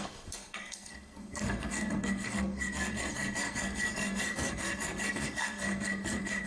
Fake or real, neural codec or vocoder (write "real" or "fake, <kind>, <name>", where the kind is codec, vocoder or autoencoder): fake, codec, SNAC